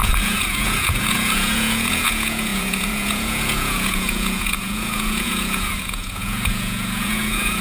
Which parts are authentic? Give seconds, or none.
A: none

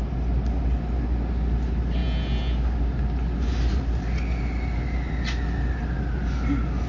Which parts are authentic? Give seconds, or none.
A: 0.0-6.9

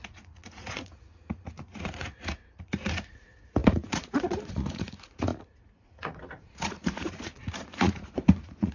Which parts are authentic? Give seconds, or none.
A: none

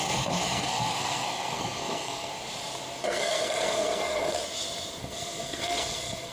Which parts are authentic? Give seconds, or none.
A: 2.3-3.0; 4.4-5.0

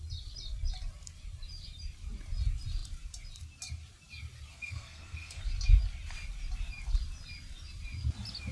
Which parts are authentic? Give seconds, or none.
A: 0.0-4.5; 5.4-8.5

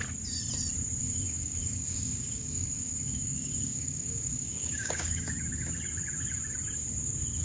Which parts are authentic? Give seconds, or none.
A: 0.0-1.0; 5.4-7.4

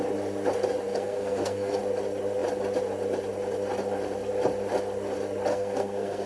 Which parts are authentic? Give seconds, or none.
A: 0.0-0.9; 1.8-5.5

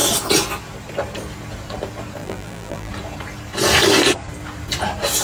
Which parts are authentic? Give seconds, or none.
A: 0.0-2.2; 2.9-5.2